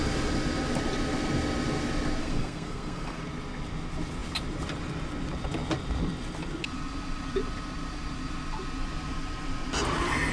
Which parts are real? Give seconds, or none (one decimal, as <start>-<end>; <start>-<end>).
0.0-2.2; 3.2-10.3